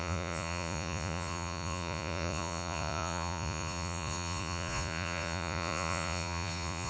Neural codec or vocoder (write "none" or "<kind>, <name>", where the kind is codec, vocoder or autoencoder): vocoder, Vocos